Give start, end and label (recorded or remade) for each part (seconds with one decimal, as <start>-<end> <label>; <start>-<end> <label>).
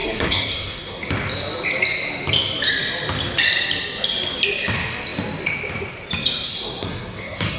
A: 0.0-1.1 remade; 1.1-6.5 recorded; 6.5-7.6 remade